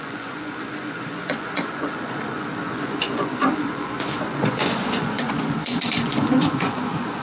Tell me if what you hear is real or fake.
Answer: fake